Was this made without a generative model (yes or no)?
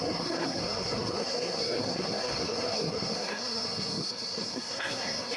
no